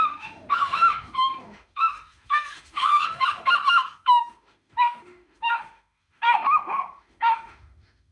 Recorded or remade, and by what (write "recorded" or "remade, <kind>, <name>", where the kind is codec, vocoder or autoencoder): remade, autoencoder, DAC-VAE